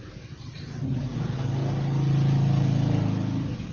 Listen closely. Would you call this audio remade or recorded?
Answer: recorded